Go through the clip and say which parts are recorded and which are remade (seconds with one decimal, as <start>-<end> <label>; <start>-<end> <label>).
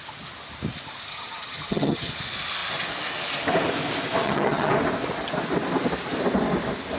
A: 0.0-1.1 recorded; 1.1-2.1 remade; 2.1-4.2 recorded; 4.2-4.7 remade; 4.7-7.0 recorded